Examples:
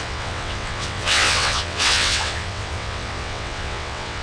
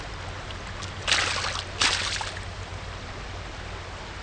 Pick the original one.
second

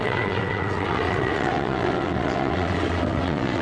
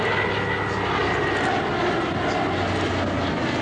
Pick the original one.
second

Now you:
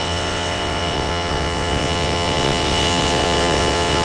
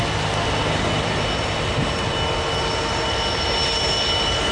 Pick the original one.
second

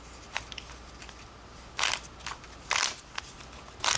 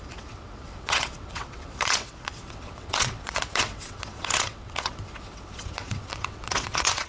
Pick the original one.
first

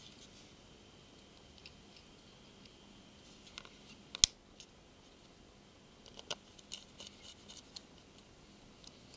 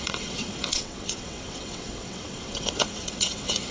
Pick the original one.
first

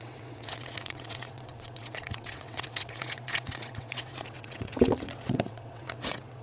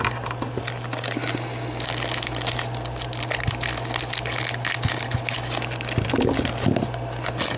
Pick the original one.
second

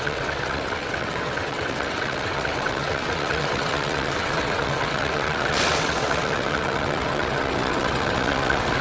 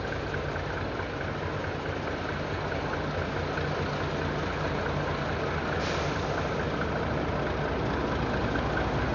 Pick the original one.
second